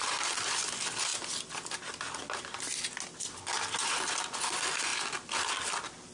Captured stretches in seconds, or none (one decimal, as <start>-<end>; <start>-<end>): 0.0-6.1